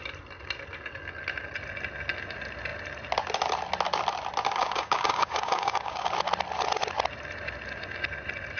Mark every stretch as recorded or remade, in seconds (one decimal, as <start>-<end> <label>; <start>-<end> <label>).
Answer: 0.0-4.6 recorded; 4.6-6.1 remade; 6.1-8.6 recorded